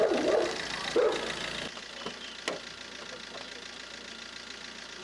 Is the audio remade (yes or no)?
no